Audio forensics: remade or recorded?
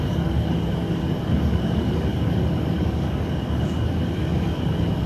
remade